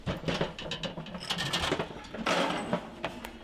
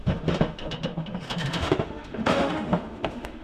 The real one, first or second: first